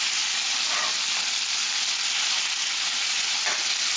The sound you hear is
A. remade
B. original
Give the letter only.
B